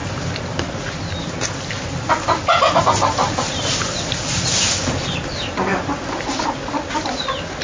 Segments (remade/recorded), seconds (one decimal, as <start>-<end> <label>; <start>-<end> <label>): 0.0-7.6 recorded